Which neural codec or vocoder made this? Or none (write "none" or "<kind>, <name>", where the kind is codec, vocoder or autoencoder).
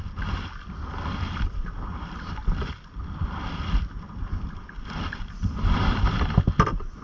none